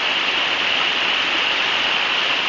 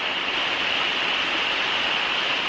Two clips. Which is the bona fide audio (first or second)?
second